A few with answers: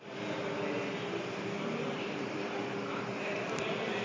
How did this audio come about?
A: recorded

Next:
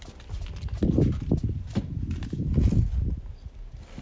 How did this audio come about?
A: recorded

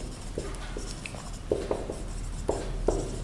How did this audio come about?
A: recorded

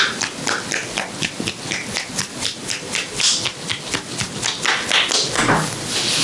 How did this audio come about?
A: recorded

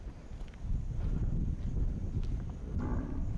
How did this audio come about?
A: recorded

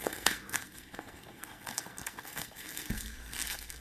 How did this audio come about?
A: remade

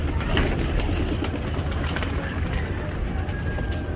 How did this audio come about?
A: recorded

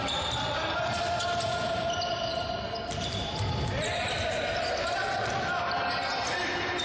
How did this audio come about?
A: recorded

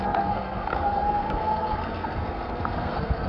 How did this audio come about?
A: remade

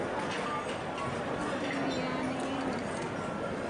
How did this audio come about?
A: recorded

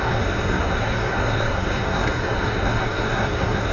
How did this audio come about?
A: remade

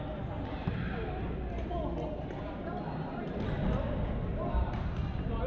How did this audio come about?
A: recorded